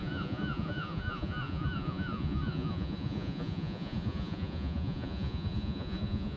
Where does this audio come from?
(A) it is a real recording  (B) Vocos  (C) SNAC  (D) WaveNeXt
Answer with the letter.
B